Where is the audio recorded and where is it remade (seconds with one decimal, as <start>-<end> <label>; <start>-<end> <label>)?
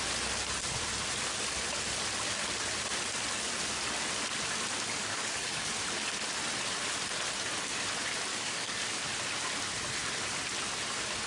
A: 0.0-5.0 recorded; 5.0-5.7 remade; 5.7-8.3 recorded; 8.3-9.0 remade; 9.0-11.3 recorded